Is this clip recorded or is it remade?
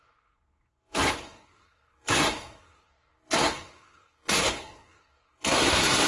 remade